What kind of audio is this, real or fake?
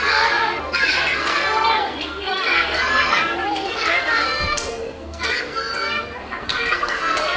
fake